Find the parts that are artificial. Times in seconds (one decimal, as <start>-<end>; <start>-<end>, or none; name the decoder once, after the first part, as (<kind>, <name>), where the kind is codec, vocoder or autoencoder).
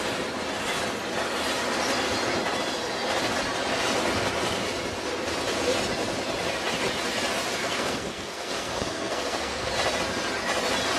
7.6-9.7 (codec, SNAC)